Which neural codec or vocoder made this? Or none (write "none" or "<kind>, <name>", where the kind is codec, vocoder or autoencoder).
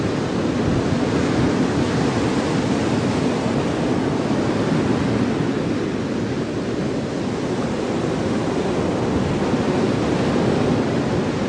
none